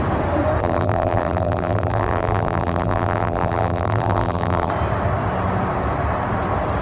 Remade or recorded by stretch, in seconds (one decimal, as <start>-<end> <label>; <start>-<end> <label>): 0.0-0.6 recorded; 0.6-4.7 remade; 4.7-6.8 recorded

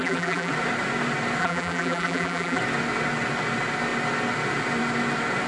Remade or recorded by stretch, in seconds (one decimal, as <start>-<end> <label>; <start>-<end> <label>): 0.0-0.5 remade; 0.5-1.4 recorded; 1.4-2.6 remade; 2.6-5.5 recorded

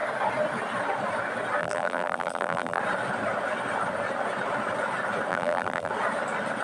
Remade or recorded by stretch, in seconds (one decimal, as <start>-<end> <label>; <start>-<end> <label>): 0.0-1.6 recorded; 1.6-2.8 remade; 2.8-5.3 recorded; 5.3-5.9 remade; 5.9-6.6 recorded